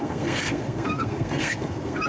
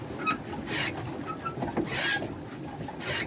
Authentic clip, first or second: second